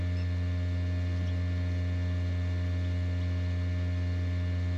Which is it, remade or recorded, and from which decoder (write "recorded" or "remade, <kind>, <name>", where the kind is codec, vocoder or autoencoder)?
recorded